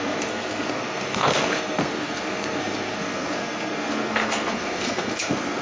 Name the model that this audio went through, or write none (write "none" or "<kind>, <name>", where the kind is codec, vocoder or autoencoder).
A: codec, SNAC